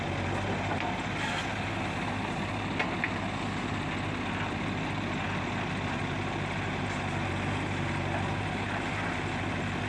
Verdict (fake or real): real